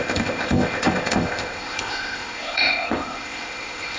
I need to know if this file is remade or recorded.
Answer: remade